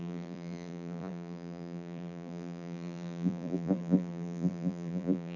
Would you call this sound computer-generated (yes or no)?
yes